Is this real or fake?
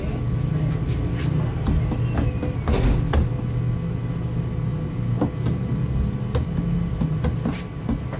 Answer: real